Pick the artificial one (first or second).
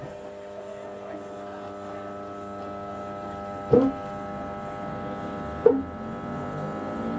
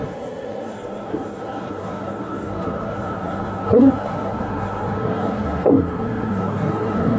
second